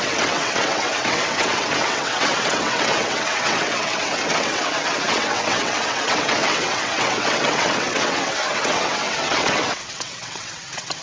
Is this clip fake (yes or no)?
yes